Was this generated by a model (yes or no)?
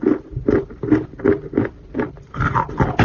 no